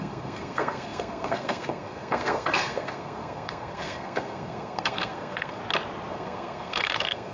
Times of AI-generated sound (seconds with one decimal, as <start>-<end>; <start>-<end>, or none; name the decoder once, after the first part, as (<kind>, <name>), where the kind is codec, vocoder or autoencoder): 0.0-5.6 (codec, SNAC); 6.1-7.3